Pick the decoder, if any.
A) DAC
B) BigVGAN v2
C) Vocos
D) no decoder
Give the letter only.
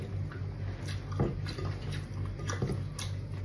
D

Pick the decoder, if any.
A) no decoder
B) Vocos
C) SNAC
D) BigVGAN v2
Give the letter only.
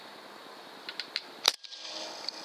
D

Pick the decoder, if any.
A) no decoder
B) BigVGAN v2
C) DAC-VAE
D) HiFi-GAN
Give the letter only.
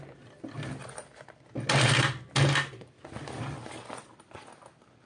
A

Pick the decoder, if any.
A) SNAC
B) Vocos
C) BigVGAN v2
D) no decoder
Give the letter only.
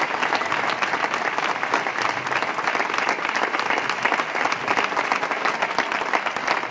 D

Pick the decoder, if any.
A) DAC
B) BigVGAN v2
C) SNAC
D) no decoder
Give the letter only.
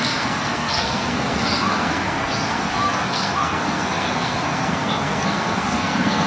C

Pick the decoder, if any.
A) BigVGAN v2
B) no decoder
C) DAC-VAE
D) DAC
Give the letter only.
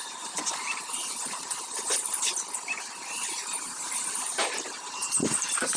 A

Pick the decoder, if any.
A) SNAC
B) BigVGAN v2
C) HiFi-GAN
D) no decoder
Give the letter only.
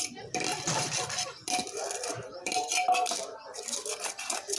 B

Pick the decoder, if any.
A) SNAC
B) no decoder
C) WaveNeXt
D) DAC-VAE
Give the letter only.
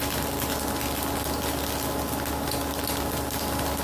B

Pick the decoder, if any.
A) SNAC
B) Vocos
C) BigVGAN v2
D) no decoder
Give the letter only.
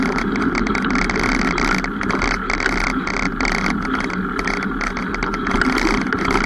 D